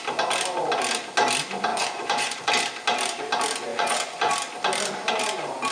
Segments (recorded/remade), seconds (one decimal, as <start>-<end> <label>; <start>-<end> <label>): 0.0-1.7 recorded; 1.7-2.4 remade; 2.4-3.7 recorded; 3.7-4.3 remade; 4.3-5.7 recorded